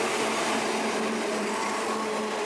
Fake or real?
real